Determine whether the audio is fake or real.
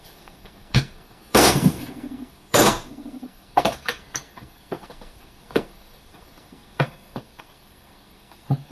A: fake